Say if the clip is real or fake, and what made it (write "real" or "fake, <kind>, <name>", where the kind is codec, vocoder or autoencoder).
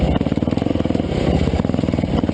real